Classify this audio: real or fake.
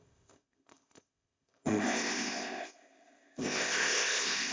fake